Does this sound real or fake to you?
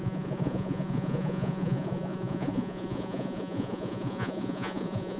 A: fake